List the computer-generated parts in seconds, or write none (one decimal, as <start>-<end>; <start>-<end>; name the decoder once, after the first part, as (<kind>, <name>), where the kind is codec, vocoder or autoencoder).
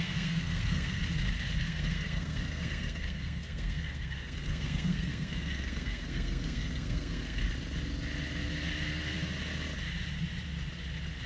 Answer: 0.0-1.0 (codec, SNAC); 1.6-7.4